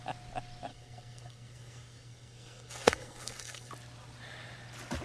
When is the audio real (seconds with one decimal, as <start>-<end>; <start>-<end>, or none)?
0.0-0.7; 3.7-5.0